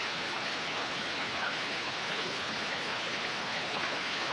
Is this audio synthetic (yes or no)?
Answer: yes